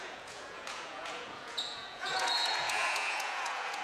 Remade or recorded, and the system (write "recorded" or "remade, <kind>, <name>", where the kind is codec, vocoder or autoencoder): remade, vocoder, Vocos